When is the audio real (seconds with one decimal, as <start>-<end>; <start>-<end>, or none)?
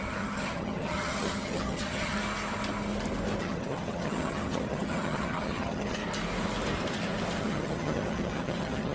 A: 2.2-3.4; 6.0-7.4